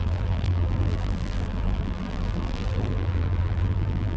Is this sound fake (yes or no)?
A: yes